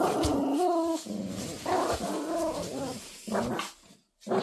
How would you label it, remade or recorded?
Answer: recorded